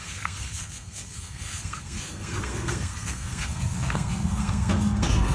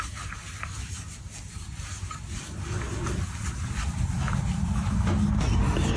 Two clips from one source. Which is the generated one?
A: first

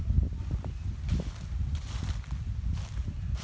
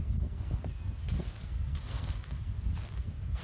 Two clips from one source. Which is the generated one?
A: second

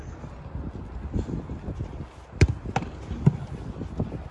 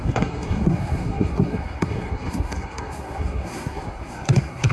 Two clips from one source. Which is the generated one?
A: second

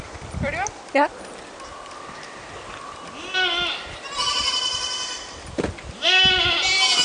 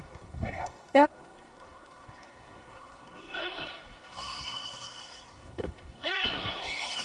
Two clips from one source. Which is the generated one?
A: second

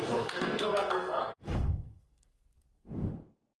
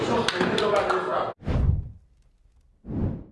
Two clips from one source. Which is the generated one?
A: first